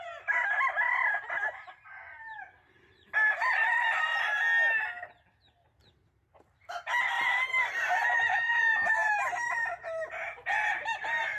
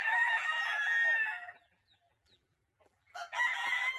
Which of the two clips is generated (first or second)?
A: second